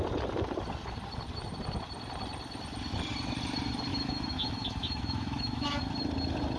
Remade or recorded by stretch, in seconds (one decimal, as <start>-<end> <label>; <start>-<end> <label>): 0.0-3.9 recorded; 3.9-5.8 remade; 5.8-6.6 recorded